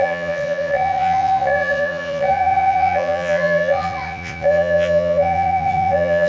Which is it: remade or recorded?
remade